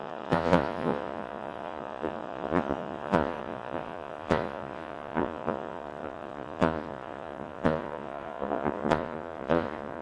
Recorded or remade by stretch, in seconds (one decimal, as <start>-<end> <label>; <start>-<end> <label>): 0.0-10.0 remade